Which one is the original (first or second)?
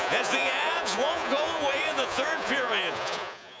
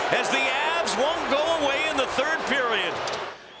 second